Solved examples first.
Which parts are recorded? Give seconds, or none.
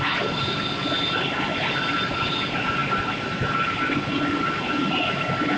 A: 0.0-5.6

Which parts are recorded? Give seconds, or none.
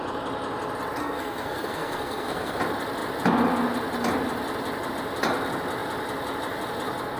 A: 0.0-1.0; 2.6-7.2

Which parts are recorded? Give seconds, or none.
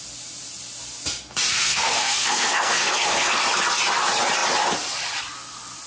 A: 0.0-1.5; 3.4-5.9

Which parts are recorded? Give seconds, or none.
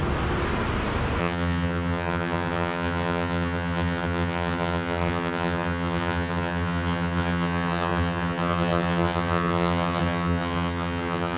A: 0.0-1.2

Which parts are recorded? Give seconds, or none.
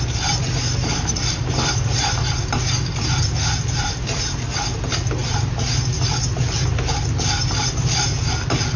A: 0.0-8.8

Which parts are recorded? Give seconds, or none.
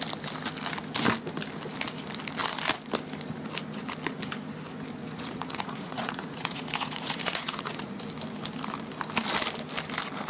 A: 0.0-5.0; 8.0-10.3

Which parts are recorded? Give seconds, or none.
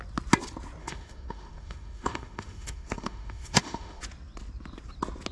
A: 0.0-0.8; 4.0-5.3